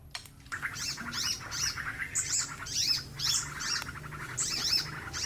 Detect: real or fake real